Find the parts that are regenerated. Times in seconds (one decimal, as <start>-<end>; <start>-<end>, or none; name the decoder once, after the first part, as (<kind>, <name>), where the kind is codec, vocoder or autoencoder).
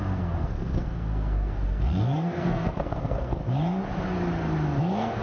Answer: 0.0-3.4 (codec, SNAC); 4.8-5.2